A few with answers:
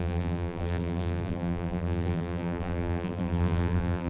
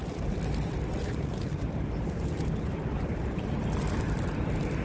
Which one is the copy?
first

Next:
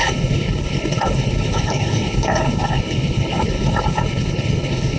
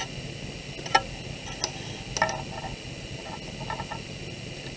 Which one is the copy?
first